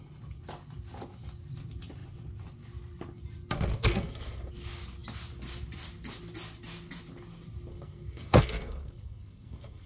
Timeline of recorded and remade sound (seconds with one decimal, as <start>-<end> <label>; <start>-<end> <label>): 0.0-3.7 recorded; 3.7-4.5 remade; 4.5-7.7 recorded; 7.7-9.9 remade